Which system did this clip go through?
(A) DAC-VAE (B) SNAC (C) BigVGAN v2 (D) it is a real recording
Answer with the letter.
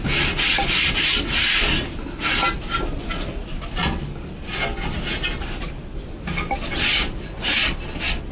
D